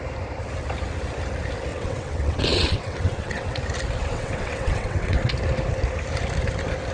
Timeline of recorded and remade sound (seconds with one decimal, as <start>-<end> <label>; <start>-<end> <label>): 0.0-1.7 recorded; 1.7-3.6 remade; 3.6-4.0 recorded; 4.0-5.3 remade; 5.3-6.9 recorded